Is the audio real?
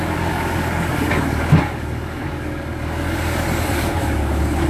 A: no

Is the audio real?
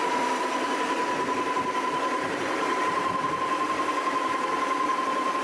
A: no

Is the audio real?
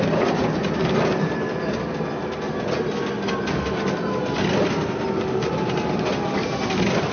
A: yes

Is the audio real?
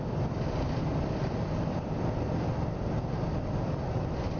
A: no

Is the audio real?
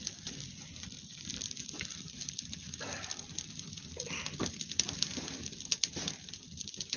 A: no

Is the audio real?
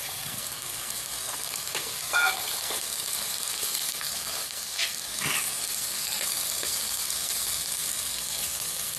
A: no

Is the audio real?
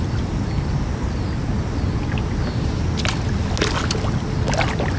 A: yes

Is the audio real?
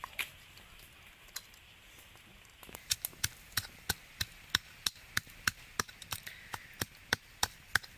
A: yes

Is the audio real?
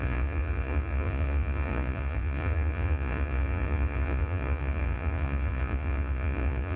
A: no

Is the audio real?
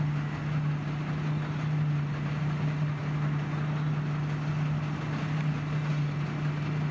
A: yes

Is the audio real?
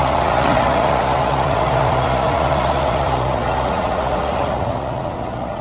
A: no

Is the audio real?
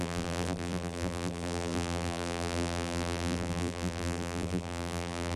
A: no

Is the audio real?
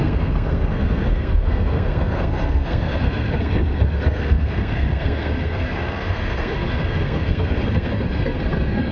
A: no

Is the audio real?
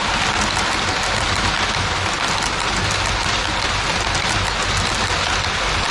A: yes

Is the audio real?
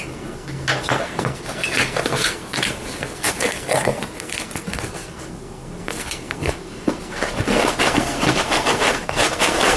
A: no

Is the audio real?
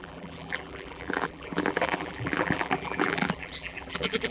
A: no